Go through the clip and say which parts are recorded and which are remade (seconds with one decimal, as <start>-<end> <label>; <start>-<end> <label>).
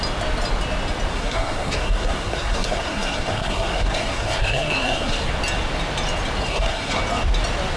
0.0-1.1 recorded; 1.1-5.3 remade; 5.3-6.4 recorded; 6.4-7.0 remade; 7.0-7.8 recorded